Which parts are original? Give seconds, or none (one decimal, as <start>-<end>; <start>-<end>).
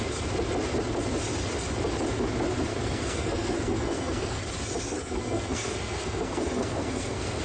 0.0-2.7; 4.4-4.9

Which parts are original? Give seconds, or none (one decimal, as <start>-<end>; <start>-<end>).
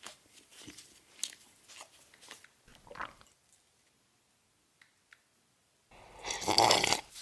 0.0-7.2